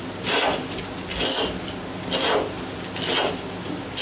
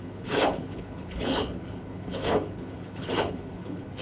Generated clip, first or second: second